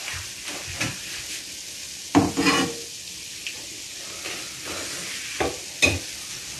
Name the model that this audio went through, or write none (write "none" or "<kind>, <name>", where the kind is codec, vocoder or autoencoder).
none